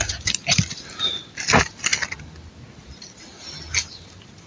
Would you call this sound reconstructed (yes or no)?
no